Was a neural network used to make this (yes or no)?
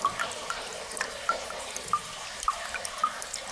no